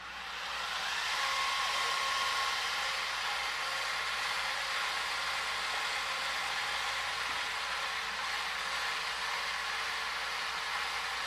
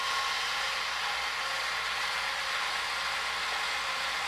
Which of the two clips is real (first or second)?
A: second